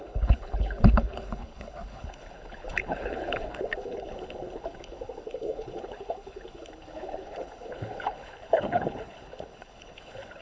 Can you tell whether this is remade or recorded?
remade